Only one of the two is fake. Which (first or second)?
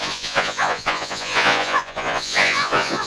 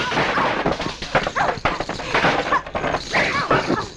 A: first